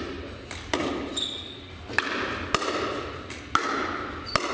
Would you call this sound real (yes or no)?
yes